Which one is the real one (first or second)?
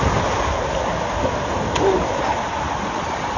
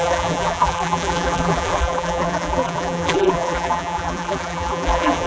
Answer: first